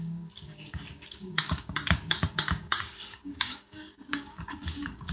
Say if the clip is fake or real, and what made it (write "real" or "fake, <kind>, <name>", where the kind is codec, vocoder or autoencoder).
fake, codec, DAC